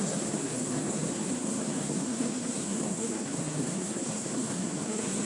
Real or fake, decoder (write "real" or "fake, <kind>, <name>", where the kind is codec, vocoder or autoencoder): fake, codec, SNAC